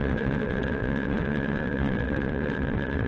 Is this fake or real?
fake